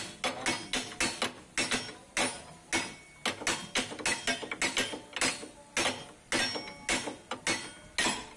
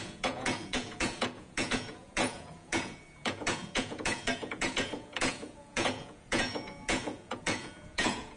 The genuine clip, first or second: first